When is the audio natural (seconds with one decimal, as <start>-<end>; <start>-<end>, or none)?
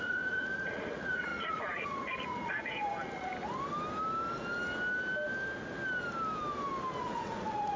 3.3-7.0